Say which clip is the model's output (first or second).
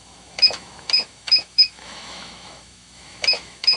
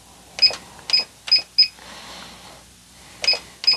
first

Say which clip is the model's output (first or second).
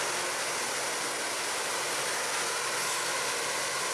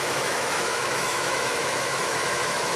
second